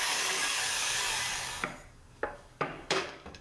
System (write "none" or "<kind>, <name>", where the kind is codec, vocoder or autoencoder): codec, DAC